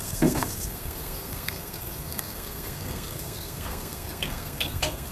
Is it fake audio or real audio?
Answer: fake